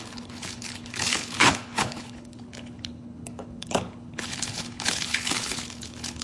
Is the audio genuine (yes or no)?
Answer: no